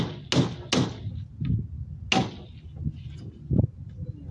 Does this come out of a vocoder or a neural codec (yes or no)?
no